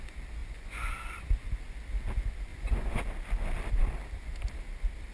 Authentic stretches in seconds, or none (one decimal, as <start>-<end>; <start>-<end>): 0.0-0.4; 0.9-2.5; 3.0-5.1